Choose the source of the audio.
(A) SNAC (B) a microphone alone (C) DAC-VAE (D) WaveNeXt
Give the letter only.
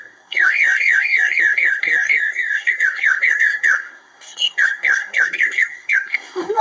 A